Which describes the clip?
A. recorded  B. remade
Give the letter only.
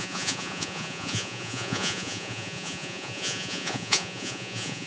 B